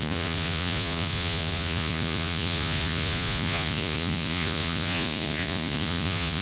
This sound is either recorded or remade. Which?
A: remade